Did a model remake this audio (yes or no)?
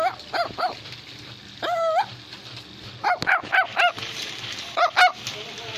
no